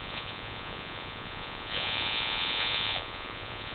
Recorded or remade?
remade